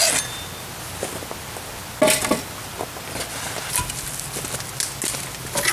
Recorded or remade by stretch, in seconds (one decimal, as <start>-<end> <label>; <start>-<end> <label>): 0.0-5.7 recorded